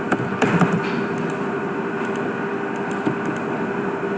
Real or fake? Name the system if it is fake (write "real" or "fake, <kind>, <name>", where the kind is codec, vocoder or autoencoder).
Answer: real